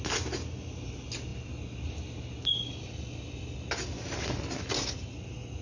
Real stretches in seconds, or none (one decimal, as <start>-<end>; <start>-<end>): 0.0-5.6